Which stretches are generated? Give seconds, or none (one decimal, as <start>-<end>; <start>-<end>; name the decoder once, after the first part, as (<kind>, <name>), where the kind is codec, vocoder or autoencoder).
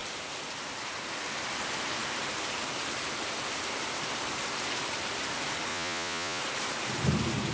5.7-6.4 (vocoder, Vocos)